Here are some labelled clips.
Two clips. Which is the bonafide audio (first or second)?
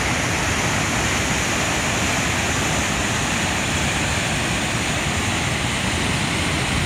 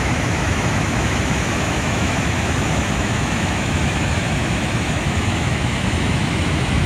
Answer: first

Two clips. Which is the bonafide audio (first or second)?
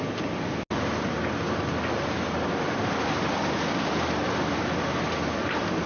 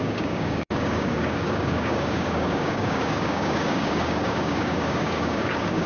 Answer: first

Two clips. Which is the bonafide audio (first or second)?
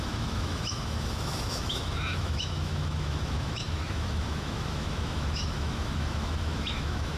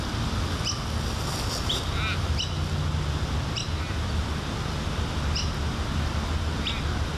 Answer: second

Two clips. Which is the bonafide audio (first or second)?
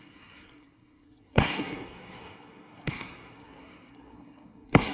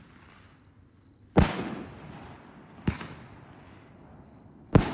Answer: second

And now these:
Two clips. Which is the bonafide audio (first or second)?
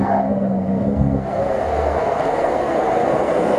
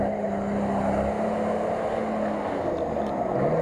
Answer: second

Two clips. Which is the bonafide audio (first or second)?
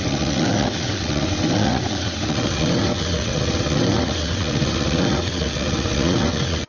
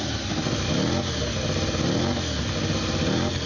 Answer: second